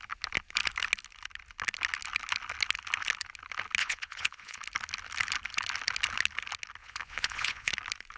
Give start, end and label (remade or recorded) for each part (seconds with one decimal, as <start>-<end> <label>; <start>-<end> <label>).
0.0-3.8 recorded; 3.8-4.6 remade; 4.6-6.8 recorded; 6.8-7.7 remade; 7.7-8.2 recorded